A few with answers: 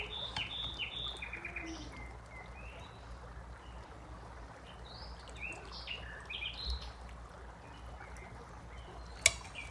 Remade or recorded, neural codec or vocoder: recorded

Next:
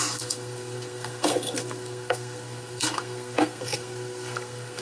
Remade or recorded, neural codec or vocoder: remade, codec, SNAC